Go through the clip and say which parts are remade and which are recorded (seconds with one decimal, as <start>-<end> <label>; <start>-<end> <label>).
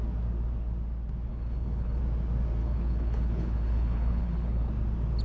0.0-1.3 recorded; 1.3-2.0 remade; 2.0-2.6 recorded; 2.6-4.7 remade; 4.7-5.2 recorded